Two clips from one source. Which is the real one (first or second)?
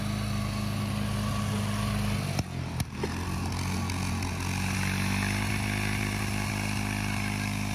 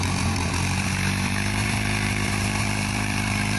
first